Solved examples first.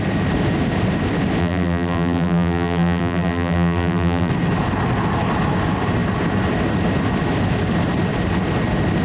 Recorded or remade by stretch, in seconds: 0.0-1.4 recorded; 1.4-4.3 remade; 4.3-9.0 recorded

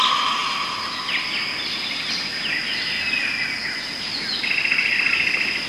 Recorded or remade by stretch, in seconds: 0.0-5.7 recorded

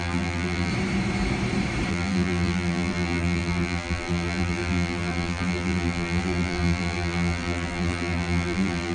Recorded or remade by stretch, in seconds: 0.0-0.7 remade; 0.7-1.9 recorded; 1.9-8.9 remade

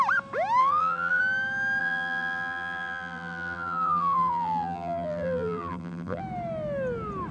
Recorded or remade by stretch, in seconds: 0.0-0.6 recorded; 0.6-1.2 remade; 1.2-1.8 recorded; 1.8-6.2 remade; 6.2-7.3 recorded

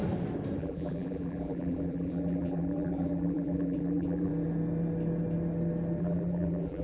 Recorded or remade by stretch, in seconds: 0.0-0.6 recorded; 0.6-4.3 remade; 4.3-6.0 recorded; 6.0-6.8 remade

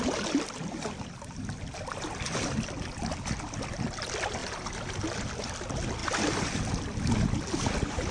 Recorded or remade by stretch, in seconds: 0.0-4.4 recorded; 4.4-5.4 remade; 5.4-8.1 recorded

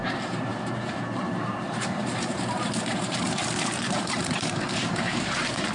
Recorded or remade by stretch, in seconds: 0.0-5.7 remade